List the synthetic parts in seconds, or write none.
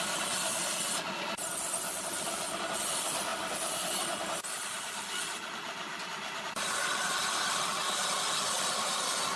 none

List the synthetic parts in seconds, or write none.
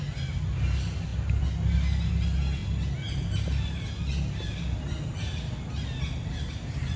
none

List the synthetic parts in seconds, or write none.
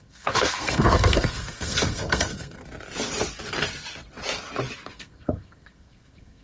0.0-2.6 (codec, SNAC); 4.9-6.4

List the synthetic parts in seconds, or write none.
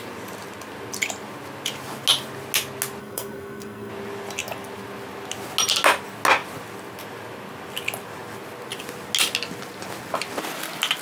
3.0-3.9 (codec, SNAC)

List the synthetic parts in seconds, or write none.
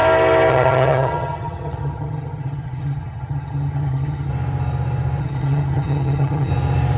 0.5-4.3 (vocoder, HiFi-GAN); 5.2-6.5